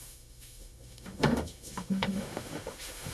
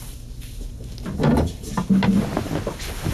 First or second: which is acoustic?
second